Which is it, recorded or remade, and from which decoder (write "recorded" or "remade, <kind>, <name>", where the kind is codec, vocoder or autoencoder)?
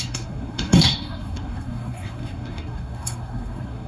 remade, codec, SNAC